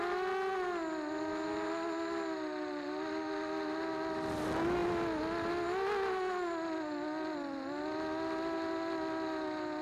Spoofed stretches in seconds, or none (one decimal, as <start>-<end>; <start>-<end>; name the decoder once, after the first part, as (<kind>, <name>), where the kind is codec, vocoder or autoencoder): 4.8-5.5 (vocoder, BigVGAN v2)